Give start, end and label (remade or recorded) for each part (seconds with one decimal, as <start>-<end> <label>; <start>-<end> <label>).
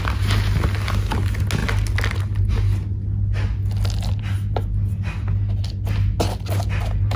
0.0-7.2 recorded